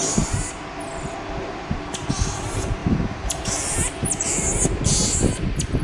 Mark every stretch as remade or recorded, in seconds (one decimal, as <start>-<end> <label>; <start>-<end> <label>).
0.0-5.8 recorded